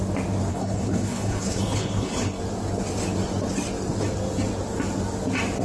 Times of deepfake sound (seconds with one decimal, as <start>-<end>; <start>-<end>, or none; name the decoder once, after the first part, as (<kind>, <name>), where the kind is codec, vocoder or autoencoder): 0.5-2.4 (codec, HILCodec)